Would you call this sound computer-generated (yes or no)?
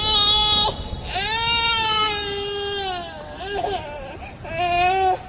no